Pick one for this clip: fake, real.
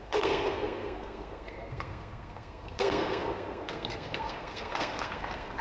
fake